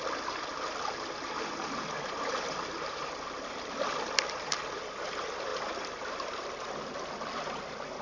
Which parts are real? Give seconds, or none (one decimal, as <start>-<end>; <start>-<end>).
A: 0.0-8.0